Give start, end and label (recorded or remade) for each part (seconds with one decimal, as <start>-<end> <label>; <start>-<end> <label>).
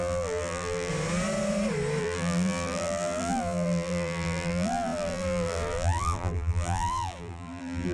0.0-0.9 remade; 0.9-2.0 recorded; 2.0-7.9 remade